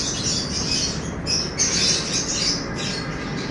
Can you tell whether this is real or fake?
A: real